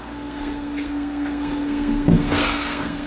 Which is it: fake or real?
fake